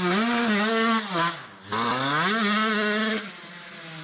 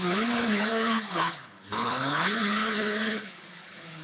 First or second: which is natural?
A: first